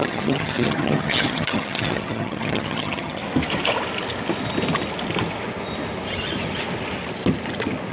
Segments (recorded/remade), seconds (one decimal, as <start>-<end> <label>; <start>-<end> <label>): 0.0-3.2 remade; 3.2-7.9 recorded